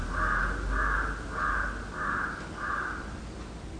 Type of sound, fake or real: real